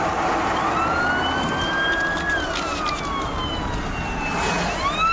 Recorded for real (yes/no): yes